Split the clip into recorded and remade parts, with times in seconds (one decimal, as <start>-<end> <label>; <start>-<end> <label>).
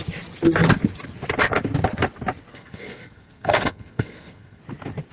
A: 0.0-2.5 recorded; 2.5-4.6 remade; 4.6-5.1 recorded